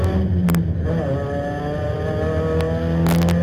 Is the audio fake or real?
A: real